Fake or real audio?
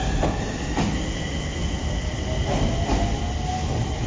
real